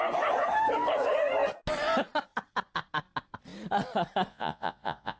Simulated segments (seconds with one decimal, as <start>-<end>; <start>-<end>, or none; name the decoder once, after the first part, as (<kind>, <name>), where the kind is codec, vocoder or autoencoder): 4.3-5.2 (vocoder, Vocos)

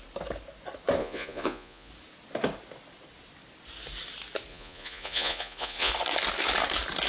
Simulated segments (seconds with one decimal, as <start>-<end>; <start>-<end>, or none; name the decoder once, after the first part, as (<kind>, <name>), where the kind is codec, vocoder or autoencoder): 1.0-1.9 (vocoder, Vocos); 4.5-5.9

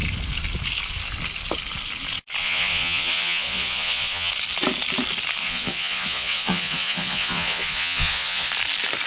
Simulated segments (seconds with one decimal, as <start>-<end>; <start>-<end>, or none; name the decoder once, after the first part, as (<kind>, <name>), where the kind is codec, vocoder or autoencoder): 2.4-4.3 (vocoder, Vocos); 5.4-8.5

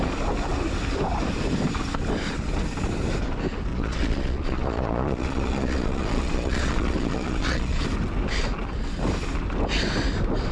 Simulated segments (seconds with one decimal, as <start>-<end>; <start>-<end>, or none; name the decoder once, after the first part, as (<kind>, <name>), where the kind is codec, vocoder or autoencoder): 3.7-7.8 (vocoder, Vocos)